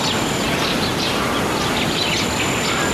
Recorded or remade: recorded